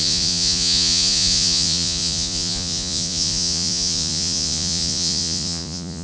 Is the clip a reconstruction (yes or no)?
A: yes